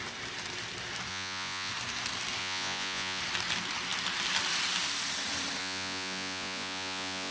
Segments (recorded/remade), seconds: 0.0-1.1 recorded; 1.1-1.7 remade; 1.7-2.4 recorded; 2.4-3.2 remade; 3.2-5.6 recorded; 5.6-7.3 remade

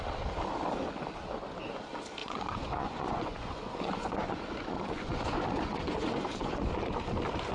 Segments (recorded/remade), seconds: 0.0-2.2 recorded; 2.2-6.7 remade; 6.7-7.5 recorded